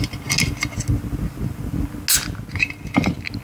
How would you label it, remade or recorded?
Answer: recorded